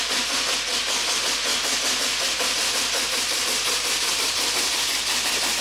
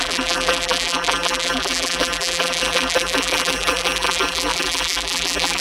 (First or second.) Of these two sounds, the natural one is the first